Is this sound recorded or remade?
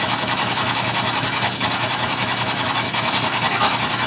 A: remade